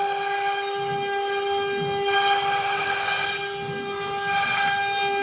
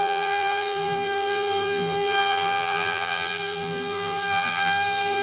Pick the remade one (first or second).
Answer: second